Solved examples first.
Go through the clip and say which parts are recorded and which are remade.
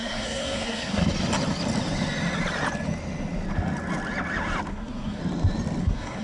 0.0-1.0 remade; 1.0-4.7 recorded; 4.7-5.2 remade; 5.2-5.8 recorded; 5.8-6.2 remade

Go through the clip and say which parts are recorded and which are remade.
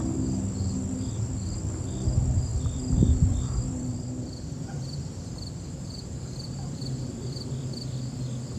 0.0-2.5 recorded; 2.5-7.7 remade; 7.7-8.6 recorded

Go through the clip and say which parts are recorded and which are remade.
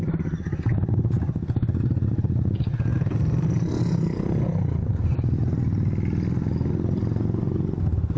0.0-8.2 recorded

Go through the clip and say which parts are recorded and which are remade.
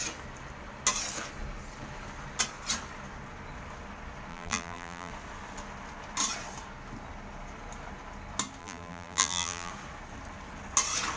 0.0-4.3 recorded; 4.3-5.1 remade; 5.1-8.6 recorded; 8.6-9.7 remade; 9.7-11.2 recorded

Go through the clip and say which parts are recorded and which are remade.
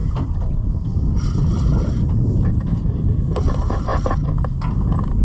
0.0-0.7 remade; 0.7-5.2 recorded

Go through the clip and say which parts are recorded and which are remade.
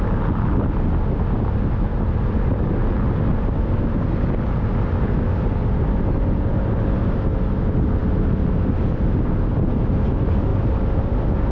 0.0-11.5 recorded